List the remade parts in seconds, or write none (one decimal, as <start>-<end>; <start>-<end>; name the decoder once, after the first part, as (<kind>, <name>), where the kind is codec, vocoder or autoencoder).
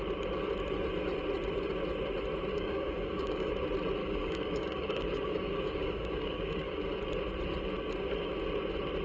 2.5-3.5 (codec, DAC); 4.0-6.9